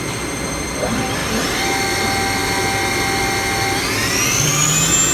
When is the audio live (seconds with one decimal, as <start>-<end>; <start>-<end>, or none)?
0.0-1.2; 2.0-4.0; 4.5-5.1